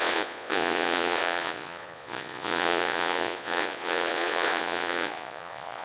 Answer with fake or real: fake